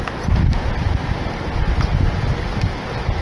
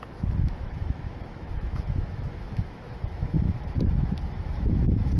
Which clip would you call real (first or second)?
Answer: first